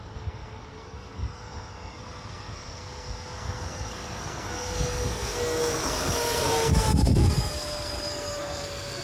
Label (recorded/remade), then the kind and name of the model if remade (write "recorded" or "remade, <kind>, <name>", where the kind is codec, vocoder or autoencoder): remade, codec, SNAC